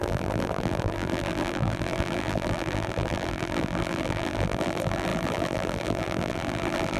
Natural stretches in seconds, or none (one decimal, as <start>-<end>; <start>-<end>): none

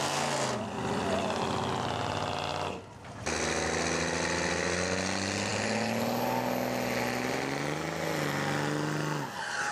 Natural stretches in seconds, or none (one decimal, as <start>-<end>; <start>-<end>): 0.0-9.7

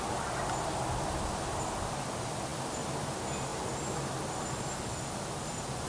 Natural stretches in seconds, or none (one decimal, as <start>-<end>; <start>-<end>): 0.0-5.9

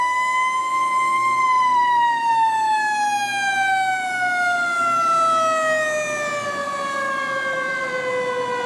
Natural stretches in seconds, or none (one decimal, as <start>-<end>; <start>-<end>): 0.0-0.6; 2.3-6.6; 7.9-8.7

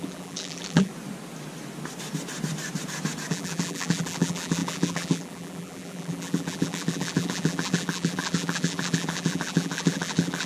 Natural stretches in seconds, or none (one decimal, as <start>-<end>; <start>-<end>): 0.9-3.3